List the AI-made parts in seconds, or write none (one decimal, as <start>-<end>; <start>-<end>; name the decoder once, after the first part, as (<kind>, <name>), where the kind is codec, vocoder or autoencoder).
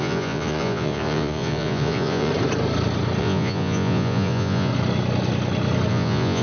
0.0-2.3 (vocoder, Vocos); 3.2-4.7; 5.9-6.4